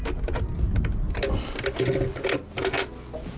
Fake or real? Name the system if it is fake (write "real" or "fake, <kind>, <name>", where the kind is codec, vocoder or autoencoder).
real